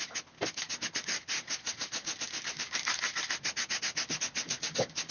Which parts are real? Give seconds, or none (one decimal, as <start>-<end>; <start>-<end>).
0.0-5.1